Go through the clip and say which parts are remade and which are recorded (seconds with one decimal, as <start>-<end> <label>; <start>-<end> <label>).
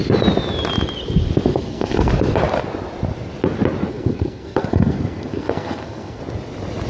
0.0-1.5 recorded; 1.5-2.1 remade; 2.1-3.9 recorded; 3.9-6.2 remade; 6.2-6.9 recorded